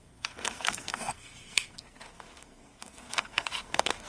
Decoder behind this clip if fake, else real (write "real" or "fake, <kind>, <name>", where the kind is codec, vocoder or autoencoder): fake, codec, SNAC